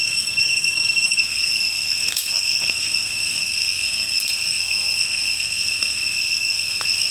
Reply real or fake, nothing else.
fake